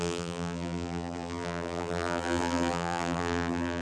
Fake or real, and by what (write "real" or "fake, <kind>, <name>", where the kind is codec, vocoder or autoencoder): fake, vocoder, BigVGAN v2